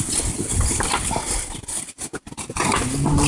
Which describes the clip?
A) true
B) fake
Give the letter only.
A